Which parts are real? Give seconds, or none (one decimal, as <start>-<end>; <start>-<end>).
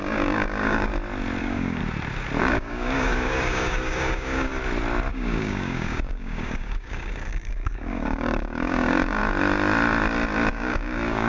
0.9-1.4; 1.8-2.4; 4.5-5.1; 9.2-10.5